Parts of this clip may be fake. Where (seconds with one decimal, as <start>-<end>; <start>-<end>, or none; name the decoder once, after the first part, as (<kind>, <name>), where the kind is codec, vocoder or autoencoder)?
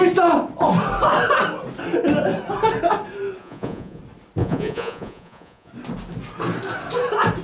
3.4-4.0 (vocoder, Vocos); 4.4-5.7